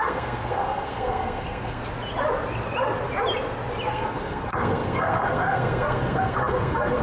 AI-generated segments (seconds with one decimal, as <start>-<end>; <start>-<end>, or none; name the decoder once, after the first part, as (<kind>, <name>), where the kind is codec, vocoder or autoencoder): 0.0-1.8 (codec, SNAC); 3.9-7.0